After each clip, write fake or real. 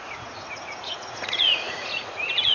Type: fake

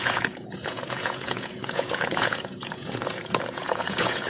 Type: fake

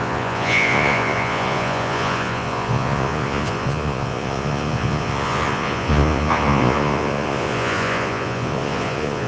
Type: fake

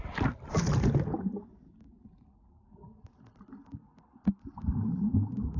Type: real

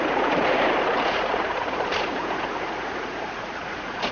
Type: fake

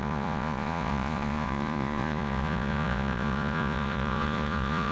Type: fake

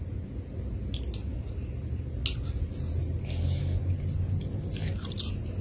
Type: real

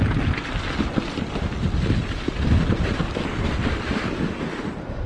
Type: real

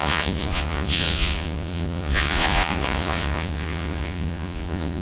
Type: fake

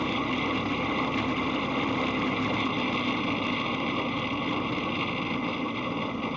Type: real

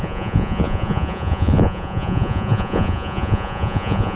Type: fake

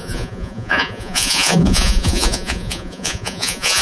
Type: fake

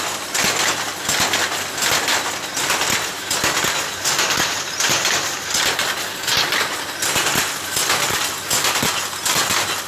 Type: real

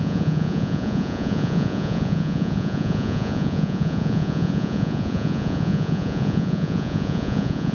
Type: fake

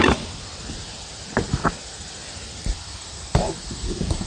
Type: real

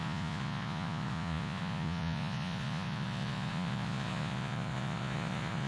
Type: fake